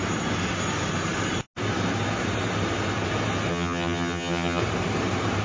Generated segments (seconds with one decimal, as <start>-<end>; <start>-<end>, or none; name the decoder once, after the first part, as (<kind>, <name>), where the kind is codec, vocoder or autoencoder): 3.5-4.6 (vocoder, HiFi-GAN)